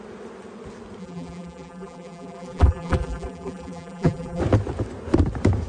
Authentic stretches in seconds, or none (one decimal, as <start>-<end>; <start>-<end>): 0.0-1.0; 4.4-5.7